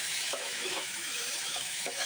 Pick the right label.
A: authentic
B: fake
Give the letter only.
B